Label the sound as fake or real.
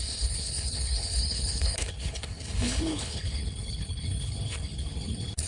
fake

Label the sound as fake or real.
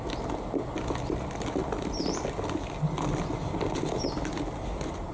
real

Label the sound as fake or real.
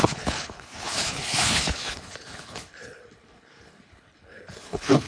fake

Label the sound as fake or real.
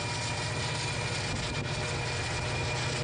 real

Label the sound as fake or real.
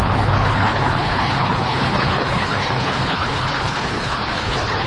fake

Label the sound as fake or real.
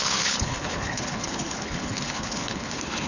fake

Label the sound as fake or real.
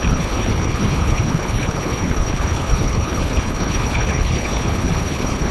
fake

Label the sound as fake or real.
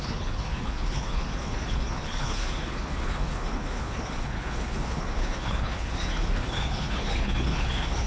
fake